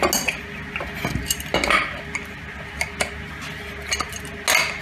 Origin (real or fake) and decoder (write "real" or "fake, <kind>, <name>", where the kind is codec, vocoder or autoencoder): real